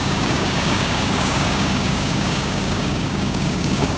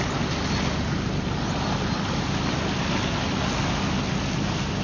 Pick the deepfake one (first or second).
first